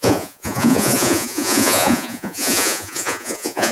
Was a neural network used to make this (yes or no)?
yes